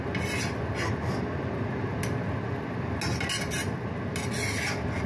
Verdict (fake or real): real